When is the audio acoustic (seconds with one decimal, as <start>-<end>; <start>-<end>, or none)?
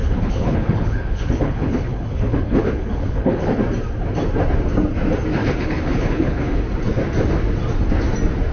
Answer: 3.6-5.4; 6.6-8.5